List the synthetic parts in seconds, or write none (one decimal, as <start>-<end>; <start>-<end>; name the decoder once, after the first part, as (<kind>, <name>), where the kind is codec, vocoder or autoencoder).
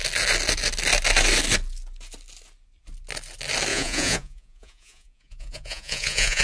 3.7-6.4 (vocoder, Vocos)